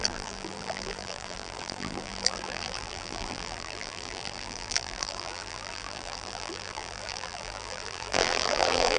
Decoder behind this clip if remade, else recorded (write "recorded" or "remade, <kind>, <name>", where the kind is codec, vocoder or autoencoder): remade, vocoder, BigVGAN v2